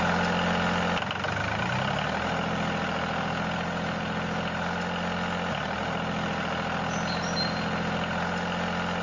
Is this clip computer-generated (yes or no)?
no